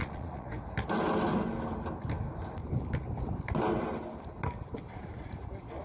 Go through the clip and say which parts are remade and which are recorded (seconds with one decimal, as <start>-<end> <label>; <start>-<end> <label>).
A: 0.0-0.5 remade; 0.5-5.8 recorded